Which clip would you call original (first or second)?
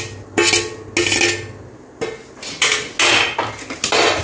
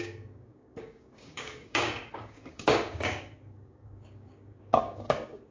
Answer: first